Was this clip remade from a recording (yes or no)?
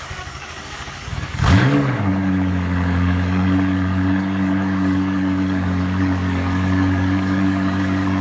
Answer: yes